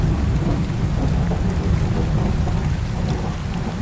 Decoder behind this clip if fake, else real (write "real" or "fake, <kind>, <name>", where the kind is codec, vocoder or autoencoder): real